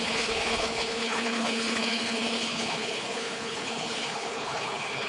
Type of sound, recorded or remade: remade